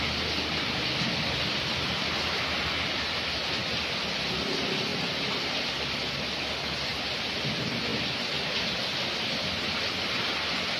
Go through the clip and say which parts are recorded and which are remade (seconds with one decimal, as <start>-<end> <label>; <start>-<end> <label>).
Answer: 0.0-10.8 recorded